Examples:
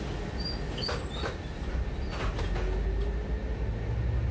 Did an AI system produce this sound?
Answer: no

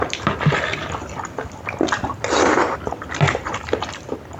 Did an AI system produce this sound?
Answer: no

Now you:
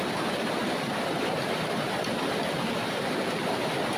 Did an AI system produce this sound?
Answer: no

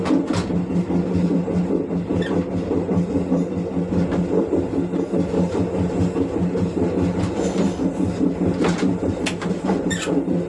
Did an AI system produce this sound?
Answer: no